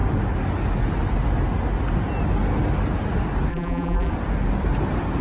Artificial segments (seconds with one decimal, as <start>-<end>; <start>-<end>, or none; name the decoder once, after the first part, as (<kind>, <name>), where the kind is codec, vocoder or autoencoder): 3.5-4.1 (vocoder, BigVGAN v2)